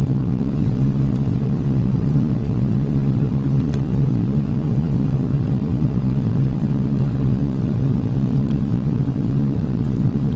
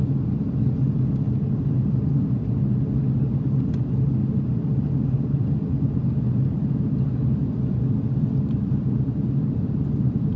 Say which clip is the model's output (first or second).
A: first